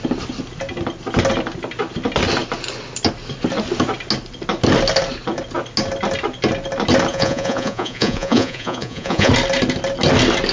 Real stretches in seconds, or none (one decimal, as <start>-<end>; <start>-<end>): 0.0-7.1; 9.3-10.5